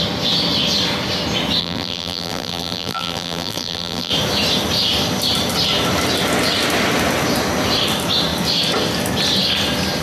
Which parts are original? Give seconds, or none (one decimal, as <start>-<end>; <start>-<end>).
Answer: 0.0-1.6; 4.1-10.0